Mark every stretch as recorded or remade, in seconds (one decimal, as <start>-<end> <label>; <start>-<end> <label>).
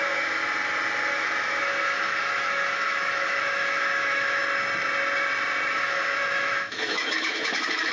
0.0-0.4 remade; 0.4-1.1 recorded; 1.1-4.4 remade; 4.4-5.7 recorded; 5.7-7.9 remade